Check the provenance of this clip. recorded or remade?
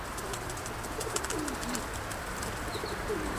recorded